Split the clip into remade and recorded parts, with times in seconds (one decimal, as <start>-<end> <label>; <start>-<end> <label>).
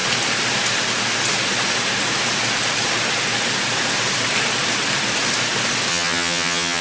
0.0-5.9 recorded; 5.9-6.8 remade